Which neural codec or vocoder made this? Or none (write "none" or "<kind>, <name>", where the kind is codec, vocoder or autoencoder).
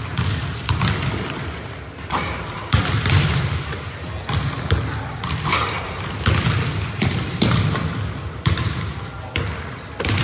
none